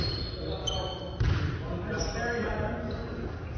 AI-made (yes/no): no